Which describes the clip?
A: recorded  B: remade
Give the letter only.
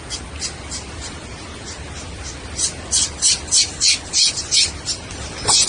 A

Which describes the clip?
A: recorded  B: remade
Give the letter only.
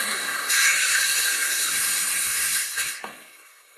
B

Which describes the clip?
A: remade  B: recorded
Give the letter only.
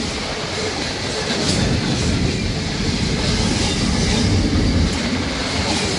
B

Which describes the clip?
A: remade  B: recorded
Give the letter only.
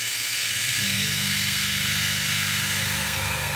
A